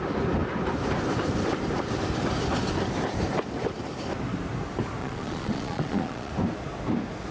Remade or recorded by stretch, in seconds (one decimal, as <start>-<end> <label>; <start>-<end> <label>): 0.0-5.0 recorded; 5.0-6.3 remade; 6.3-7.3 recorded

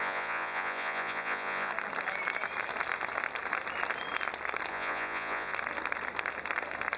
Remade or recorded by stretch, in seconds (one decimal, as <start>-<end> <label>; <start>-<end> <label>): 0.0-1.7 remade; 1.7-4.7 recorded; 4.7-5.5 remade; 5.5-7.0 recorded

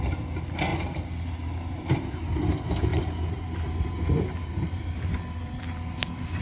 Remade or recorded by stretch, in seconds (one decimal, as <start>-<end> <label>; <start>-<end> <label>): 0.0-6.4 recorded

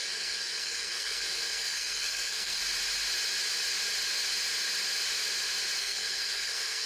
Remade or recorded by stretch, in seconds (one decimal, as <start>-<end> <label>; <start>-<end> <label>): 0.0-2.6 remade; 2.6-5.8 recorded; 5.8-6.9 remade

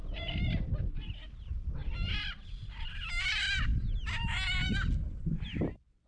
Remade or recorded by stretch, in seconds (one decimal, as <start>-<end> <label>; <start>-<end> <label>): 0.0-0.8 recorded; 0.8-3.7 remade; 3.7-4.5 recorded; 4.5-6.1 remade

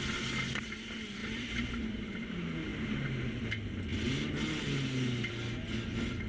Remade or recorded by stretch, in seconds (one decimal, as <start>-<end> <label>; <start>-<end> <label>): 0.0-1.2 recorded; 1.2-2.0 remade; 2.0-6.3 recorded

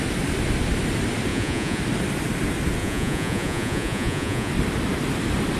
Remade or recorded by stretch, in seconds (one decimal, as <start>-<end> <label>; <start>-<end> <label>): 0.0-1.3 recorded; 1.3-1.8 remade; 1.8-2.8 recorded; 2.8-4.5 remade; 4.5-5.6 recorded